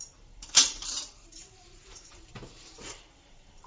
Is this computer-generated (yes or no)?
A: yes